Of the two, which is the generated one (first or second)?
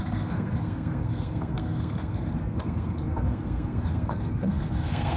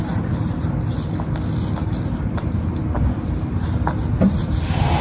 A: first